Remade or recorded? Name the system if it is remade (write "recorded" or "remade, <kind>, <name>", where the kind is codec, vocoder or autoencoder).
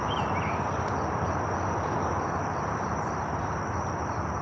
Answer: recorded